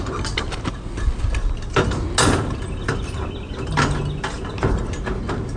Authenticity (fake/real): real